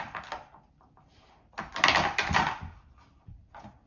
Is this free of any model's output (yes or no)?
yes